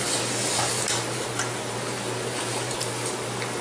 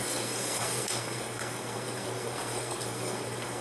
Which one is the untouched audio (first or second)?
first